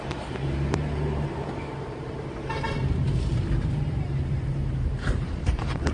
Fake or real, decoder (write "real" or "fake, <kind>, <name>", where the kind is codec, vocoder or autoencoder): fake, vocoder, BigVGAN v2